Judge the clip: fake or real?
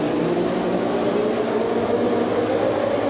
real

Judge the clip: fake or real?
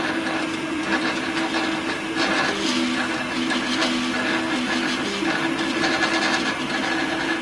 real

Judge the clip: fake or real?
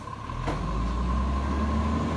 real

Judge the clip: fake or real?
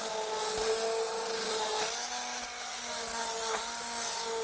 real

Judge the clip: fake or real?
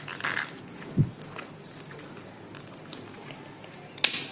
real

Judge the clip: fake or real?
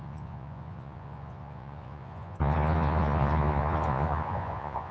fake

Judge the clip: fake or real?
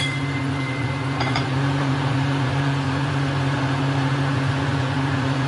fake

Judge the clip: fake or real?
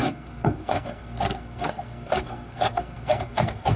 fake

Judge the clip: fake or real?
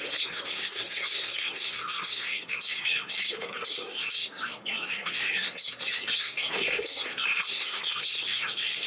fake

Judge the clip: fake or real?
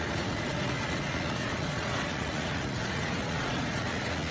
fake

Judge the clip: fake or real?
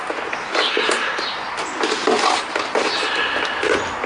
real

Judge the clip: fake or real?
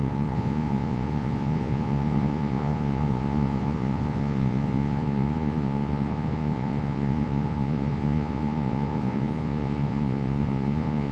fake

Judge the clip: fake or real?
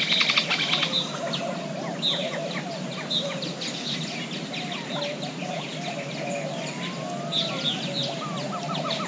real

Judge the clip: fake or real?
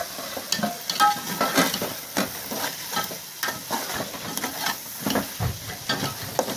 real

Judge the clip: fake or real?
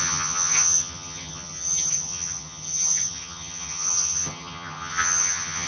fake